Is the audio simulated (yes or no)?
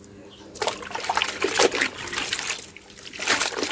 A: no